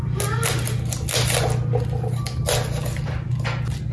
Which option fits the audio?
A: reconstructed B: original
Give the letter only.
B